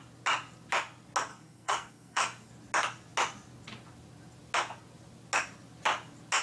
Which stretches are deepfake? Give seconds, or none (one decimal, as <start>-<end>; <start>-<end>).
1.3-2.5

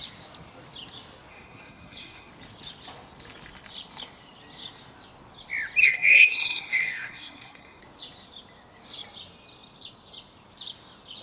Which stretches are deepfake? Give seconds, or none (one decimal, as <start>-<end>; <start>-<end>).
1.3-2.3; 5.8-7.8

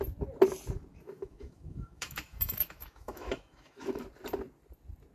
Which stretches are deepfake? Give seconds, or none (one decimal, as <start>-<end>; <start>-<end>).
0.9-4.0

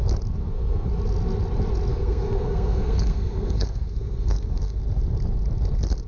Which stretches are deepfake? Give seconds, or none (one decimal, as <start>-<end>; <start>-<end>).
0.4-0.9; 1.9-4.8

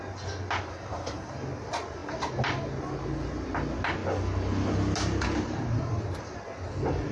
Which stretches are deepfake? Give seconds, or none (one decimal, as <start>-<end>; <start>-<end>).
0.7-1.3

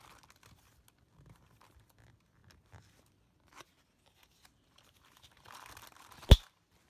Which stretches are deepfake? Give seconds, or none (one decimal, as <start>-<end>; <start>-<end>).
none